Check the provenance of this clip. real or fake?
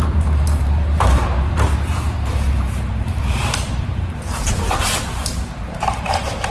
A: fake